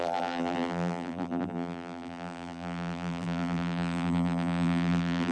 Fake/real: fake